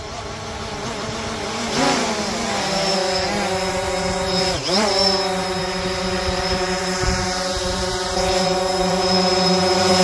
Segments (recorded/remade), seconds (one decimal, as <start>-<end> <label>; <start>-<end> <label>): 0.0-3.0 remade; 3.0-3.7 recorded; 3.7-10.0 remade